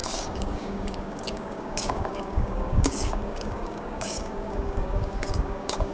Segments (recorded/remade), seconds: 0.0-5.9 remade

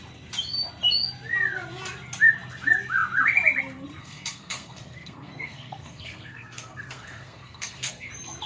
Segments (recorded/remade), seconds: 0.0-4.0 recorded; 4.0-8.1 remade; 8.1-8.5 recorded

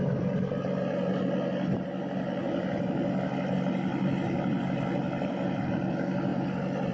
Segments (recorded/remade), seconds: 0.0-6.9 recorded

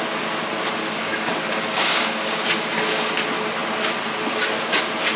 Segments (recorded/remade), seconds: 0.0-1.0 recorded; 1.0-3.1 remade; 3.1-5.2 recorded

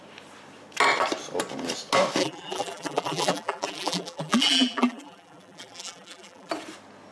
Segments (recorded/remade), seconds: 0.0-2.2 recorded; 2.2-6.5 remade; 6.5-7.1 recorded